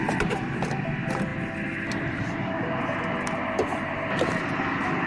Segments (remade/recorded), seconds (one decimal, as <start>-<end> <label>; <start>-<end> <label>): 0.0-5.1 recorded